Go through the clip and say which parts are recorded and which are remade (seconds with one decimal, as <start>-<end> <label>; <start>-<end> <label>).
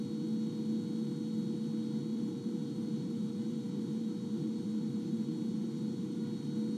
0.0-2.1 recorded; 2.1-6.2 remade; 6.2-6.8 recorded